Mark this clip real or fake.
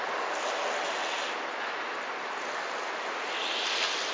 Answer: fake